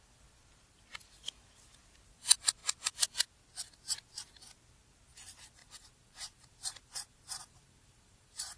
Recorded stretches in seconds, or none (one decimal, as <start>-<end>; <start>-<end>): 0.0-5.6